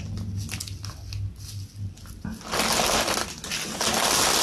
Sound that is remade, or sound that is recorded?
recorded